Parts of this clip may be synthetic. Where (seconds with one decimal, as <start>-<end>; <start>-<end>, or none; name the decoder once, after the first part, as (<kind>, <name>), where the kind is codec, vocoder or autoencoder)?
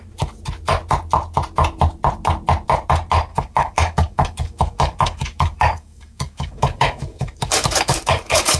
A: 3.3-8.6 (codec, DAC)